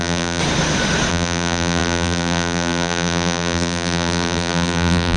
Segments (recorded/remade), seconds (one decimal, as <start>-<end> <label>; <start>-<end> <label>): 0.0-0.4 remade; 0.4-1.1 recorded; 1.1-5.2 remade